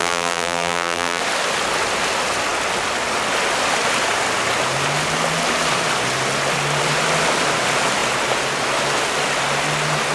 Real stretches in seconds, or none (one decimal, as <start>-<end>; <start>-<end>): 1.2-10.1